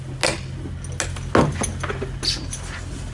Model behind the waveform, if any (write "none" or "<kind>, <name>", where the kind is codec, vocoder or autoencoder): none